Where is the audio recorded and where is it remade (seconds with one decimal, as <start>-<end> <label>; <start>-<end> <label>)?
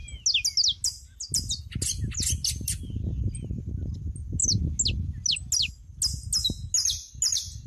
0.0-7.7 recorded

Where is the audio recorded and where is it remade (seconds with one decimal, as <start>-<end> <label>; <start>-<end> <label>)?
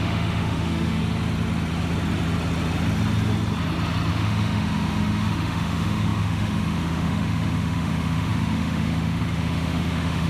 0.0-1.0 remade; 1.0-4.1 recorded; 4.1-10.3 remade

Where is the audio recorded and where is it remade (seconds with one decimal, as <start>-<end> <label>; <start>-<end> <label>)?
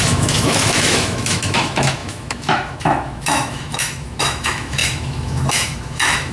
0.0-6.3 remade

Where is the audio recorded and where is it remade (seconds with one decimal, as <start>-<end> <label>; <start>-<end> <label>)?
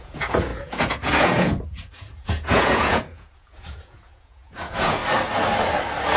0.0-5.0 remade; 5.0-6.2 recorded